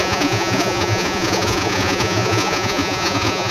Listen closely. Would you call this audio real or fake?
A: fake